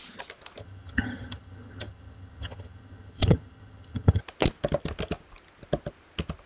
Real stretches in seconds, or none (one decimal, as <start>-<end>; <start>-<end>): 0.0-0.6; 4.2-6.5